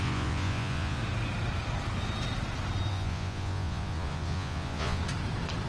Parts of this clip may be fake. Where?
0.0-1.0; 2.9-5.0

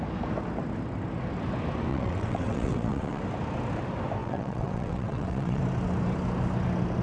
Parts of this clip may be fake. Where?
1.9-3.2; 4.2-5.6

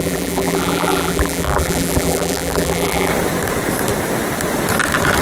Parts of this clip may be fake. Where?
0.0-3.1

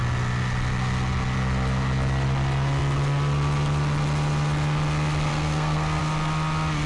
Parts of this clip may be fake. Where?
5.3-6.0

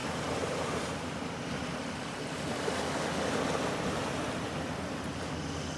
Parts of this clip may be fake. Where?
0.0-1.0

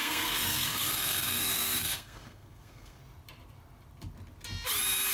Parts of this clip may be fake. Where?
0.0-3.0